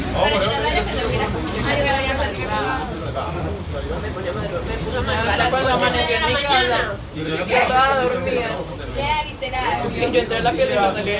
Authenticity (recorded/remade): remade